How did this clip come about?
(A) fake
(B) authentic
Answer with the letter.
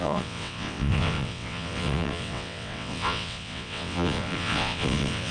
A